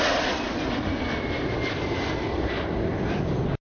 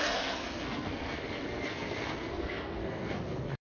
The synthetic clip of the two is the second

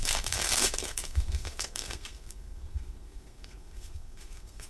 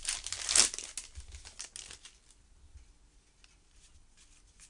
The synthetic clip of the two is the first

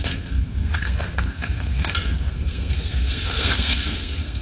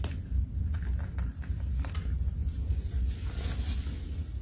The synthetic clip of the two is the first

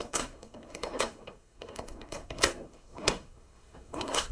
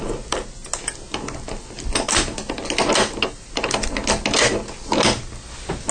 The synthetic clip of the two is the first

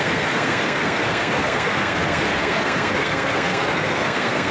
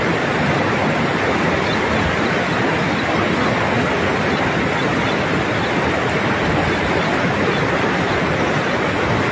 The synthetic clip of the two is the first